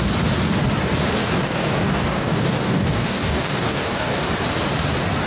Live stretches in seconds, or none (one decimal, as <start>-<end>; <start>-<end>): 0.0-1.2; 4.2-5.3